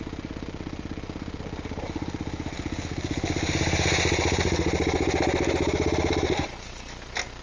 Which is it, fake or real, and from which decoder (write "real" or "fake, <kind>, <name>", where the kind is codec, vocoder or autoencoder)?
real